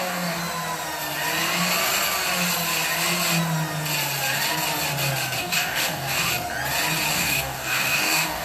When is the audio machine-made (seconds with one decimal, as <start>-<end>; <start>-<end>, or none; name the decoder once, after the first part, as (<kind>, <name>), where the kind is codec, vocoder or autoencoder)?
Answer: 0.0-0.4 (codec, DAC); 5.4-6.3; 7.1-8.4